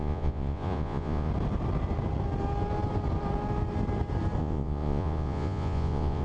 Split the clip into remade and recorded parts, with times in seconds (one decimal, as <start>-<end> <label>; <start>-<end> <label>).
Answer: 0.0-1.3 remade; 1.3-4.4 recorded; 4.4-6.2 remade